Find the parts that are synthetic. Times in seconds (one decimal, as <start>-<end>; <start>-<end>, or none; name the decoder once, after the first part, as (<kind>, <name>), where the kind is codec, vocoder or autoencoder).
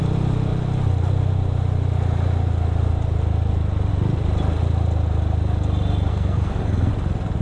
6.1-6.9 (codec, SNAC)